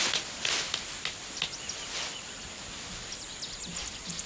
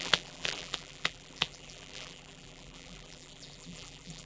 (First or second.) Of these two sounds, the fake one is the second